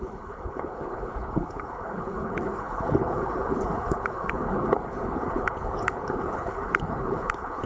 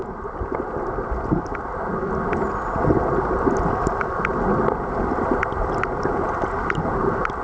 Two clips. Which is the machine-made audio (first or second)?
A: first